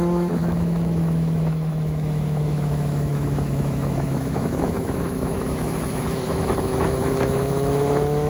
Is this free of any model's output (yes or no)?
no